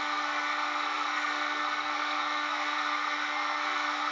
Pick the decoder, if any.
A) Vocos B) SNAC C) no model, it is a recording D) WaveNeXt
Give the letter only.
B